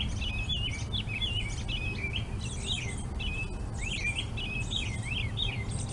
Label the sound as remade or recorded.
recorded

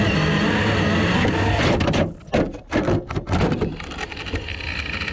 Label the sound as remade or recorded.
recorded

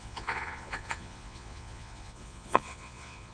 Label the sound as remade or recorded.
remade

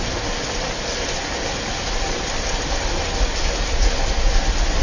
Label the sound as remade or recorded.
recorded